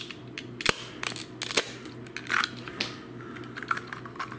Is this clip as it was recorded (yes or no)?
yes